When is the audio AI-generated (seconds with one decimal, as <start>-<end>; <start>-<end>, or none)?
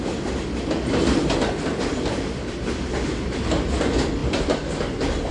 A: 4.2-4.7